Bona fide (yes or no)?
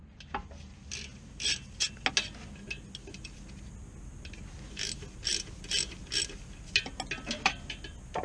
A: yes